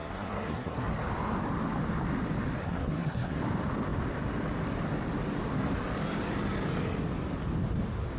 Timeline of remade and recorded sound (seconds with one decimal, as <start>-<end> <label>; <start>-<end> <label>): 0.0-0.9 remade; 0.9-2.6 recorded; 2.6-3.4 remade; 3.4-8.2 recorded